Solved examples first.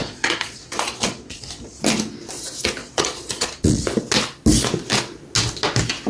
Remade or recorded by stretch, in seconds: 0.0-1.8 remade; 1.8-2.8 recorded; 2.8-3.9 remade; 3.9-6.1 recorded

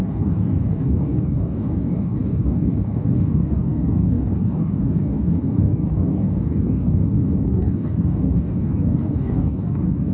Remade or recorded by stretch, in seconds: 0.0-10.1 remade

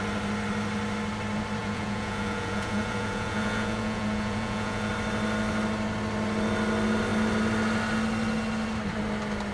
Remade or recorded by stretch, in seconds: 0.0-1.6 recorded; 1.6-4.9 remade; 4.9-9.5 recorded